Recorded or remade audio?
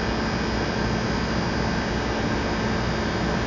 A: recorded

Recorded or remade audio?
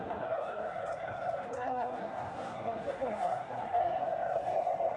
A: remade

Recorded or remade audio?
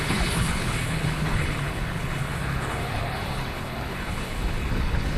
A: remade